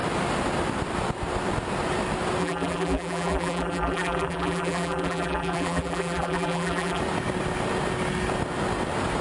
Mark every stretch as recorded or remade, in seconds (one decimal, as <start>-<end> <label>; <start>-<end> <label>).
0.0-2.4 recorded; 2.4-7.0 remade; 7.0-9.2 recorded